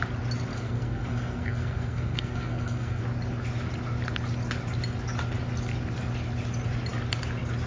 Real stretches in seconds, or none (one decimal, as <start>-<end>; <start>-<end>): 0.0-0.5; 3.0-7.7